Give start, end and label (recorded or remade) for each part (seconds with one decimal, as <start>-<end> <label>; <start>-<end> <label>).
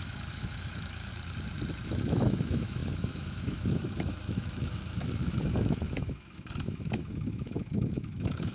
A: 0.0-1.1 remade; 1.1-1.7 recorded; 1.7-8.5 remade